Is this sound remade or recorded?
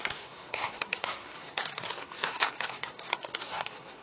remade